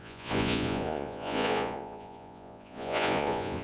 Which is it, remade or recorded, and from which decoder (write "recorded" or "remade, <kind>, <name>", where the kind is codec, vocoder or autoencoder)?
remade, vocoder, Vocos